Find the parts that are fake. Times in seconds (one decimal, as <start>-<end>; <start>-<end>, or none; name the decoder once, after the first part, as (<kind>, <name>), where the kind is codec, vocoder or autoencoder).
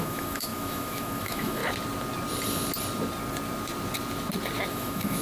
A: 0.0-1.6 (autoencoder, DAC-VAE); 4.7-5.2